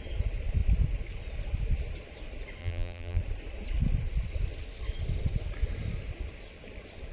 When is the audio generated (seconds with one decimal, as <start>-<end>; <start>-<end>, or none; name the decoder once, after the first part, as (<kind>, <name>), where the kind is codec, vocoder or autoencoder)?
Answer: 2.6-3.2 (vocoder, BigVGAN v2)